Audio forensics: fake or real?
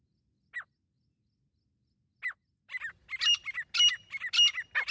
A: real